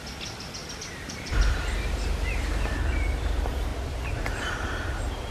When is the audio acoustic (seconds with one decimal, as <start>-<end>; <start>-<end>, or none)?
none

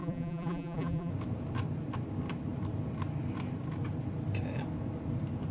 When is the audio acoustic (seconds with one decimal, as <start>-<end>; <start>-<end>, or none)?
1.1-5.5

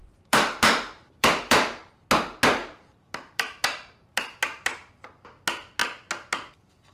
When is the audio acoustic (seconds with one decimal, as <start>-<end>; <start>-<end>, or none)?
1.9-2.6; 4.9-6.9